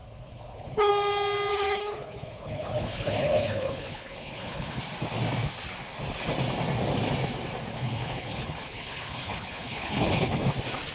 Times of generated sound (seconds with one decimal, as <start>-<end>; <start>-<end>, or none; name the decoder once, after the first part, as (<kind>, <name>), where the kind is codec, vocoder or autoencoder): 0.0-0.9 (codec, HILCodec); 1.5-4.8; 7.7-10.4